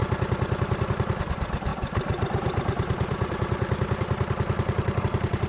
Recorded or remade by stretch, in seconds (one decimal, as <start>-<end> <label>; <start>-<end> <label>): 0.0-0.9 recorded; 0.9-5.5 remade